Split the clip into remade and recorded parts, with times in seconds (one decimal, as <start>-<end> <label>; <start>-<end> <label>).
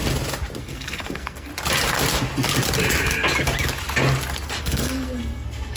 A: 0.0-0.6 recorded; 0.6-1.5 remade; 1.5-4.6 recorded; 4.6-5.8 remade